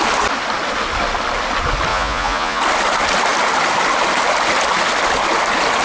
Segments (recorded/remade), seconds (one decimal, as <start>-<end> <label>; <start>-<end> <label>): 0.0-1.9 recorded; 1.9-2.6 remade; 2.6-5.8 recorded